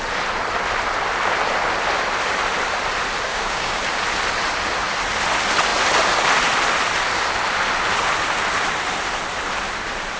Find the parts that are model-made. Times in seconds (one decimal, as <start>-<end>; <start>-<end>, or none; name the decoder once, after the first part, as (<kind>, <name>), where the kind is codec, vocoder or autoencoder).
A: 3.3-3.8 (codec, DAC)